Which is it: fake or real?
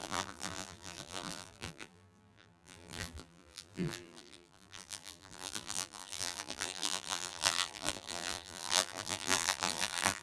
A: fake